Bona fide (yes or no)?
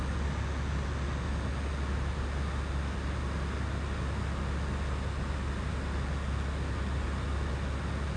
yes